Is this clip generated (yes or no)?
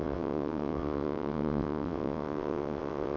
yes